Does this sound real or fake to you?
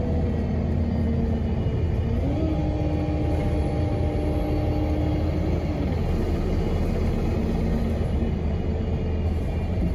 real